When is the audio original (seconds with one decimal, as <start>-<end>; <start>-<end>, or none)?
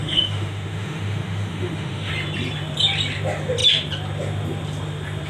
2.1-5.3